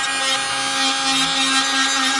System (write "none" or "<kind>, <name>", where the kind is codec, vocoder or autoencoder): none